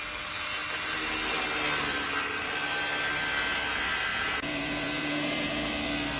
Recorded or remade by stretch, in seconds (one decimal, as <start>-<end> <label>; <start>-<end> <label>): 0.0-4.1 recorded; 4.1-5.7 remade; 5.7-6.2 recorded